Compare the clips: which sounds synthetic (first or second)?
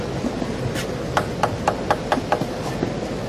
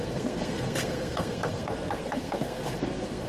second